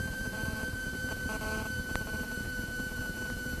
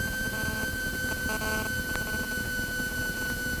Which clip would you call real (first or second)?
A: second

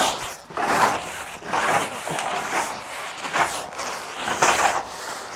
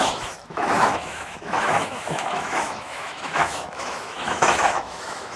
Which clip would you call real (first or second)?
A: first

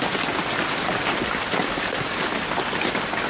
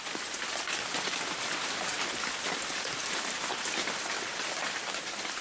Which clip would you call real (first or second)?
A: first